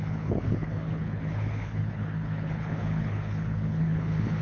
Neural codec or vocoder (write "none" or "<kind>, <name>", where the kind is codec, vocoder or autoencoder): codec, HILCodec